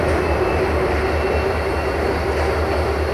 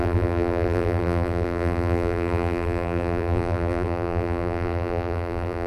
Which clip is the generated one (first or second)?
second